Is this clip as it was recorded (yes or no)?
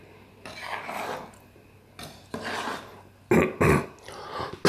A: yes